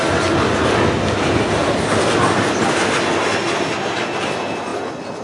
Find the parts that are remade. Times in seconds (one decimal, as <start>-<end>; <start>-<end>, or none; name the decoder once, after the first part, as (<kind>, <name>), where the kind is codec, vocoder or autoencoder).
none

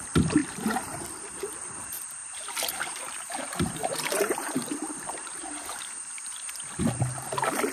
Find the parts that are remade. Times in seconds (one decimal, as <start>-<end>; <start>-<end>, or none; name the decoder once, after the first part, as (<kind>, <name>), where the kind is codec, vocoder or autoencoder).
0.4-1.5 (vocoder, BigVGAN v2); 2.2-6.8

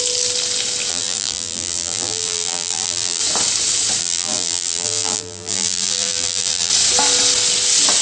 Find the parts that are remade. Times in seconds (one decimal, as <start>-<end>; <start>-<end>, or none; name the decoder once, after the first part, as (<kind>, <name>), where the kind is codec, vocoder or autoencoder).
0.9-3.2 (vocoder, BigVGAN v2); 4.0-6.7

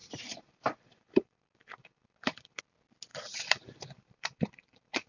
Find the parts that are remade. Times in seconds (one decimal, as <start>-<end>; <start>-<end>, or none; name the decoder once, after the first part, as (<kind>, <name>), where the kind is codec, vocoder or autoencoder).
0.0-2.6 (vocoder, BigVGAN v2); 3.1-5.1

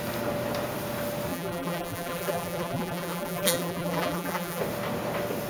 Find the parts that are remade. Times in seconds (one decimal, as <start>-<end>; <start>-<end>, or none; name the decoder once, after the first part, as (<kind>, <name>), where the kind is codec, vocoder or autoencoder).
1.3-4.6 (vocoder, BigVGAN v2)

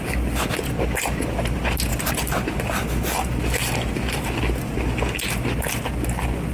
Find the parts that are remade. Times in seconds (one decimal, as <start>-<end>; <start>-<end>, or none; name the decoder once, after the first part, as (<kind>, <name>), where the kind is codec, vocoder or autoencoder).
none

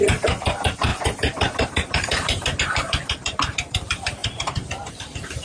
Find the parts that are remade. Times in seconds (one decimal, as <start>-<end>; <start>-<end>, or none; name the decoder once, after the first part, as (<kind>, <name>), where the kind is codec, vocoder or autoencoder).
0.0-5.4 (vocoder, BigVGAN v2)